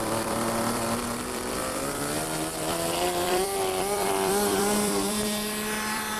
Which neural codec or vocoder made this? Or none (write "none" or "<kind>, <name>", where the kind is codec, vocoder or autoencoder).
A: vocoder, BigVGAN v2